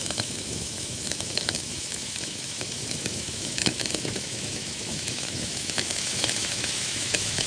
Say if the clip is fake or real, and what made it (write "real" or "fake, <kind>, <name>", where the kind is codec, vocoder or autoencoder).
fake, autoencoder, DAC-VAE